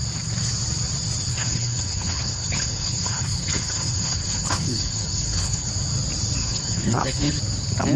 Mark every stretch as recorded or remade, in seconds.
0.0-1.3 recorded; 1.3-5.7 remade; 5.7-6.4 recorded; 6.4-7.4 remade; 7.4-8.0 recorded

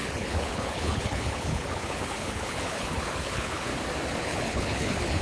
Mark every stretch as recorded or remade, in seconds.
0.0-3.7 remade; 3.7-4.2 recorded; 4.2-5.2 remade

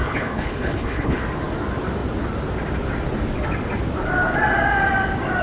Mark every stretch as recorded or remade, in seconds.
0.0-1.2 remade; 1.2-5.4 recorded